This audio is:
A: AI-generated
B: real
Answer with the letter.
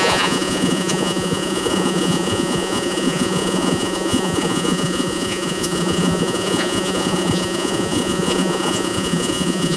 A